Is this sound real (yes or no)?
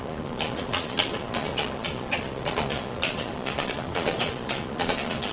no